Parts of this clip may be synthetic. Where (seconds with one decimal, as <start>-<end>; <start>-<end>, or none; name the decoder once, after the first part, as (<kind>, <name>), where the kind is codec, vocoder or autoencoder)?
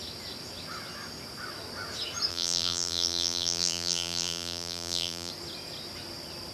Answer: 2.3-5.3 (vocoder, BigVGAN v2)